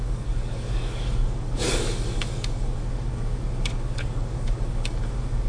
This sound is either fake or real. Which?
fake